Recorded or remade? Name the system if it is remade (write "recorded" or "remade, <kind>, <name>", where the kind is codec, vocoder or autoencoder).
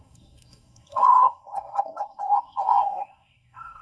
remade, codec, SNAC